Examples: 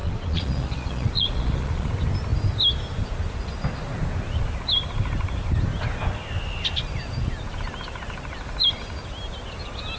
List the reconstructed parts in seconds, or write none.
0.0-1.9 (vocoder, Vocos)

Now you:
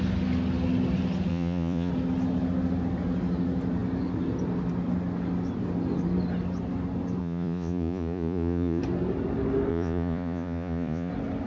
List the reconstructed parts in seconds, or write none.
1.3-1.9 (vocoder, Vocos); 7.2-8.8; 9.7-11.1

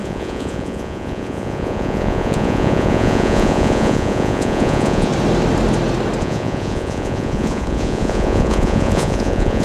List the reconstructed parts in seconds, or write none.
0.0-5.1 (vocoder, Vocos); 6.2-9.6

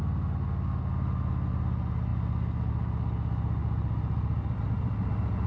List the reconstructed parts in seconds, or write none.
none

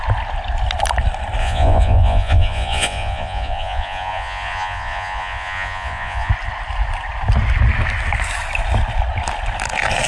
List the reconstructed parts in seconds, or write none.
1.4-6.3 (vocoder, Vocos)

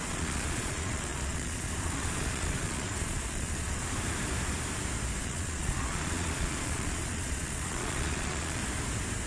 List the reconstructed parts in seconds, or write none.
0.0-3.8 (vocoder, Vocos); 5.2-8.6

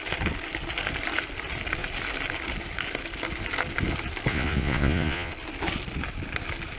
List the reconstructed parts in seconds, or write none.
4.3-5.3 (vocoder, Vocos)